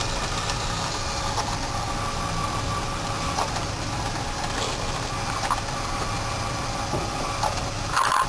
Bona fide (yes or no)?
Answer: yes